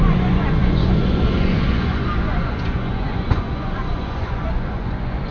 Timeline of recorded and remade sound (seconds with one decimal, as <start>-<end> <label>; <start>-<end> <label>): 0.0-5.3 remade